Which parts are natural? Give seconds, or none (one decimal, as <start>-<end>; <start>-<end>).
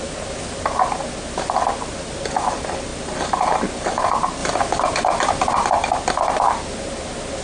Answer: 0.0-7.4